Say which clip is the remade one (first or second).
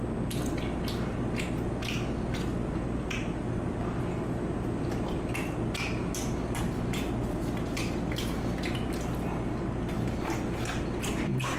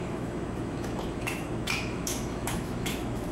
second